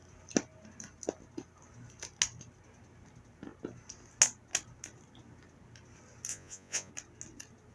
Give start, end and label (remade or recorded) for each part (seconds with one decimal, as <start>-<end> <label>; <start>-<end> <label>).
0.0-6.3 recorded; 6.3-6.9 remade; 6.9-7.7 recorded

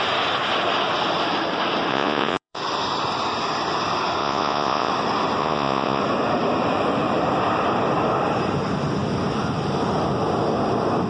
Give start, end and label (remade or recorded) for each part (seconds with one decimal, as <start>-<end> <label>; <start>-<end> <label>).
0.0-1.9 recorded; 1.9-2.6 remade; 2.6-4.2 recorded; 4.2-4.9 remade; 4.9-5.4 recorded; 5.4-6.0 remade; 6.0-11.1 recorded

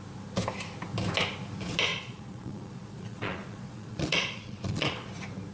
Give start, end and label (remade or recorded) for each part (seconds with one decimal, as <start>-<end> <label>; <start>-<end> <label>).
0.0-1.9 recorded; 1.9-5.1 remade; 5.1-5.5 recorded

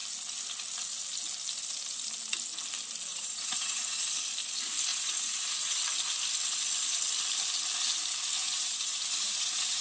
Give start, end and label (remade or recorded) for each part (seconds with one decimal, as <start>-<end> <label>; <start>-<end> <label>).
0.0-3.1 recorded; 3.1-4.1 remade; 4.1-4.9 recorded; 4.9-5.8 remade; 5.8-8.4 recorded; 8.4-9.8 remade